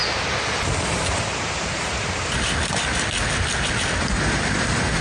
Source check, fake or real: real